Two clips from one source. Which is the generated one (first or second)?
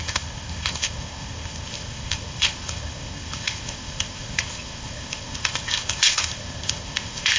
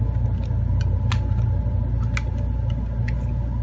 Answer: first